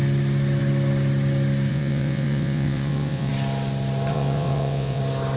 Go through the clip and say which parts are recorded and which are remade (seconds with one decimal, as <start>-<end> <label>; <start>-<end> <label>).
0.0-1.7 recorded; 1.7-3.3 remade; 3.3-4.1 recorded; 4.1-5.0 remade; 5.0-5.4 recorded